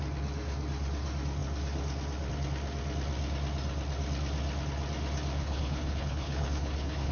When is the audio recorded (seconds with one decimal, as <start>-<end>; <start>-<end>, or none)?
0.0-5.4